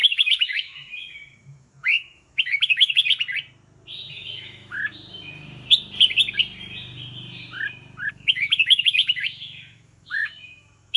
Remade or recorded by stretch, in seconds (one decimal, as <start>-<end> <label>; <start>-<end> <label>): 0.0-3.0 remade; 3.0-4.1 recorded; 4.1-4.8 remade; 4.8-8.1 recorded; 8.1-11.0 remade